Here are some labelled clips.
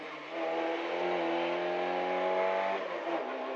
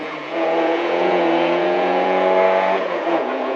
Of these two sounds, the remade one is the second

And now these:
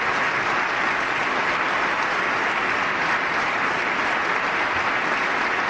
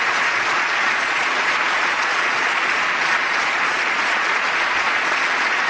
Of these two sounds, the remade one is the second